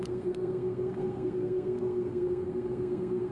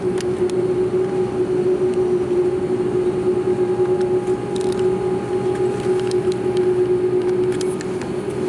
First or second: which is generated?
first